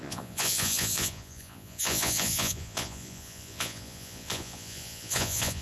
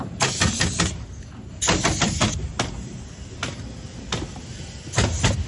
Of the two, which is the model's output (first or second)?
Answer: first